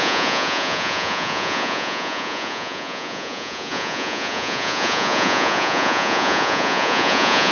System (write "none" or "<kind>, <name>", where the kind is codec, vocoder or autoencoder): vocoder, Vocos